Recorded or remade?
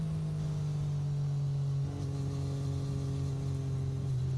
recorded